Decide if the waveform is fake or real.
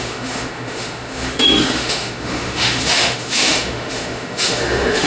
fake